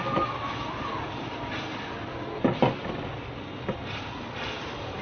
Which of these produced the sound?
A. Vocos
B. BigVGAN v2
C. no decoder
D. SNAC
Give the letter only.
C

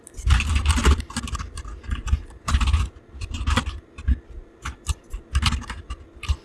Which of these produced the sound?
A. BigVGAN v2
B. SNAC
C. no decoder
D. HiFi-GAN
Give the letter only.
C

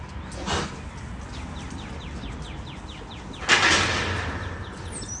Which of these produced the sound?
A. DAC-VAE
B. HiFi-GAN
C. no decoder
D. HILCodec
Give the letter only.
C